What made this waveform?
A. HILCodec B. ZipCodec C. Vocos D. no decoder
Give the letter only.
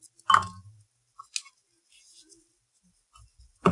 D